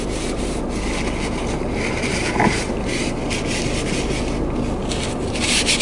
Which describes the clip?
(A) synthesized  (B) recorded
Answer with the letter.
B